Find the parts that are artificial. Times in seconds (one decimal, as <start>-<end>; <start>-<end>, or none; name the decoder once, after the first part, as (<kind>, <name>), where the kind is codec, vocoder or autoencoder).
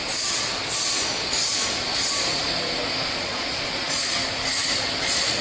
3.2-4.2 (vocoder, Vocos); 5.0-5.4